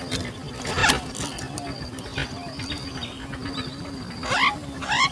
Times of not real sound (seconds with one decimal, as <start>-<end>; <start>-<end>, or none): 2.2-3.2; 3.7-5.1